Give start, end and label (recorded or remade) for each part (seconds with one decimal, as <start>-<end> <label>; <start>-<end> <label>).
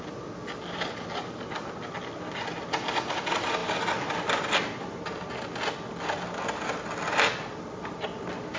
0.0-8.6 recorded